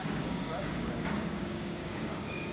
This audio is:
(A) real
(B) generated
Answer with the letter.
B